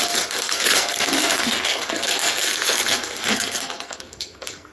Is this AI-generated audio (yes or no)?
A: yes